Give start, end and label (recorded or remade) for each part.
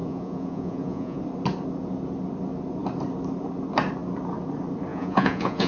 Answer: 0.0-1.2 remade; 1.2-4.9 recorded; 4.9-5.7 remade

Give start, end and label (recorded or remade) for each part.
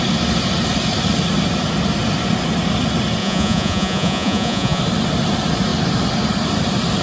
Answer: 0.0-3.2 recorded; 3.2-4.8 remade; 4.8-7.0 recorded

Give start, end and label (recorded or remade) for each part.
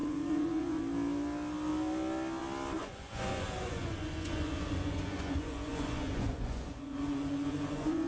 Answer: 0.0-0.8 remade; 0.8-2.8 recorded; 2.8-8.1 remade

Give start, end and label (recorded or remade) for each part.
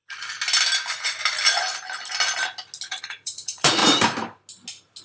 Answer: 0.0-3.0 recorded; 3.0-3.8 remade; 3.8-5.0 recorded